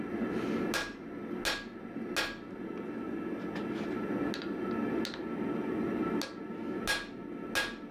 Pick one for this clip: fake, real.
real